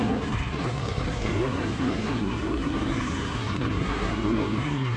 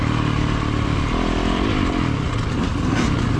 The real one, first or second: second